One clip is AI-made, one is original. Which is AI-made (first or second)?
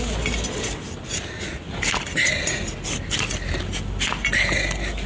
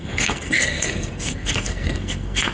second